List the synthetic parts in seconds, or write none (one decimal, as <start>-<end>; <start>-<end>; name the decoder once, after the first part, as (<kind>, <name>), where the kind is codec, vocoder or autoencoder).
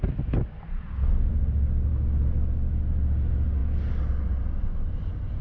none